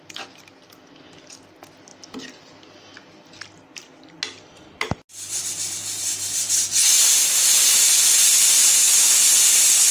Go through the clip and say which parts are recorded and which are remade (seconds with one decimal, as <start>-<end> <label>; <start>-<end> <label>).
0.0-9.9 recorded

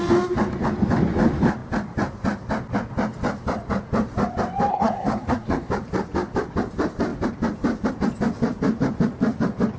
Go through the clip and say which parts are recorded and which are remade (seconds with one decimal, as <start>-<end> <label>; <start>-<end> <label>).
0.0-4.7 recorded; 4.7-5.7 remade; 5.7-9.8 recorded

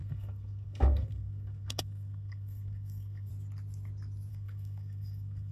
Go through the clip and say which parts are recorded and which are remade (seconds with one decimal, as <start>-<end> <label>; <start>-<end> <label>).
0.0-3.3 remade; 3.3-4.3 recorded; 4.3-5.5 remade